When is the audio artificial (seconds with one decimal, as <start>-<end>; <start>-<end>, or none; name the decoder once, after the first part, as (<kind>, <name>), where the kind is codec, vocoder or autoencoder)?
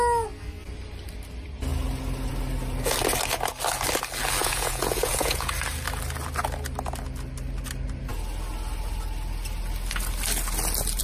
4.4-5.5 (vocoder, Vocos)